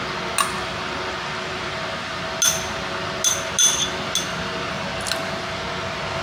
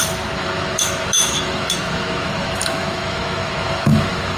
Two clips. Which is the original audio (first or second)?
first